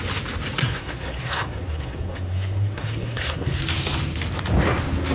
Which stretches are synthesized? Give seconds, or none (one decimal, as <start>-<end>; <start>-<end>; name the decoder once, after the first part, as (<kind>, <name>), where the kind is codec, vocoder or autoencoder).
0.6-3.6 (codec, SNAC)